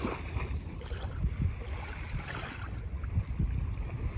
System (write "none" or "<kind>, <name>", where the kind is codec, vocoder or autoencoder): none